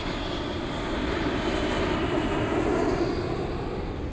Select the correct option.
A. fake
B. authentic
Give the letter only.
B